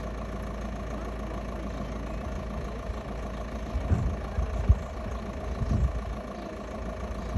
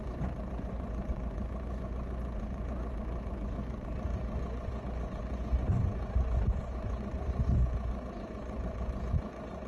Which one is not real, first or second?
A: second